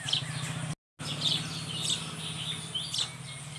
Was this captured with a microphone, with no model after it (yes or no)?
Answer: yes